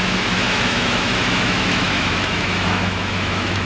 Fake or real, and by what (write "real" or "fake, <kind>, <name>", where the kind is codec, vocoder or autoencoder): fake, autoencoder, DAC-VAE